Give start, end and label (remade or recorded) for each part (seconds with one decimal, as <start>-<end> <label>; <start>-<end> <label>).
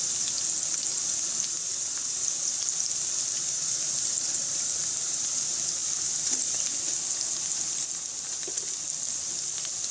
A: 0.0-9.9 recorded